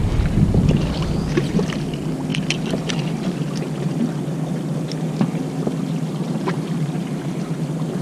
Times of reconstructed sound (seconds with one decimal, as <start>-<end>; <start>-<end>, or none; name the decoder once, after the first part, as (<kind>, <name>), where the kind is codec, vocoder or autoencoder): none

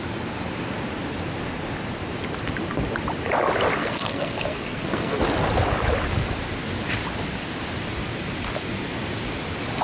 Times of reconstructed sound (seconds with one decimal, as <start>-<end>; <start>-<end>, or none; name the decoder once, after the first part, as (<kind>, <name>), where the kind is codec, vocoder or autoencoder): 3.8-5.2 (codec, SNAC)

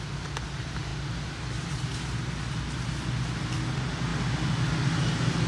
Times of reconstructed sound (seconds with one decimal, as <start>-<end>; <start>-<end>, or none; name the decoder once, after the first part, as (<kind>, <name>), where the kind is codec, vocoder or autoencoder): none

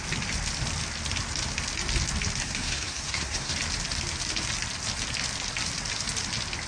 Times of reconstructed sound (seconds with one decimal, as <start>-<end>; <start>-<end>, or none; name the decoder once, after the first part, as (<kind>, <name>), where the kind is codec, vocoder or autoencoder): 2.4-3.5 (codec, SNAC)

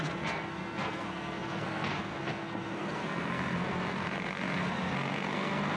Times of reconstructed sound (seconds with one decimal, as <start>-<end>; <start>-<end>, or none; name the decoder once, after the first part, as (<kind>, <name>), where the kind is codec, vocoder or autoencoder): 0.0-5.8 (codec, SNAC)

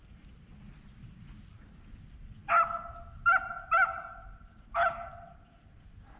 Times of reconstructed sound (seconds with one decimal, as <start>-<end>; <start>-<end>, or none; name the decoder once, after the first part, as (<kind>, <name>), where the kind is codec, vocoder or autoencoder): none

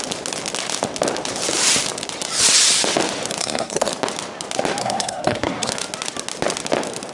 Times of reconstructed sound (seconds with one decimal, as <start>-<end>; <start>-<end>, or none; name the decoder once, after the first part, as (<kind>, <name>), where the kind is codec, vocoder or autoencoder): 3.4-3.9 (codec, SNAC); 4.8-5.7

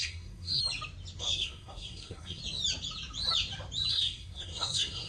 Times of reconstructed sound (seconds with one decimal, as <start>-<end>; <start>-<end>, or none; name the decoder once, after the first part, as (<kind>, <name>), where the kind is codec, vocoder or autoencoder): 0.0-0.6 (codec, SNAC); 1.2-2.4; 3.9-5.1